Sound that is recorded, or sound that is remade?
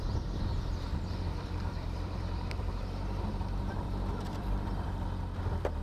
remade